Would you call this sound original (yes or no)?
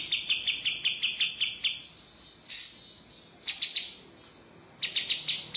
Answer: yes